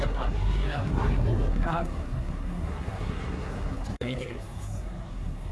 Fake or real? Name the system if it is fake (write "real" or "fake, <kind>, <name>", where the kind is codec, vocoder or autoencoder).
fake, codec, SNAC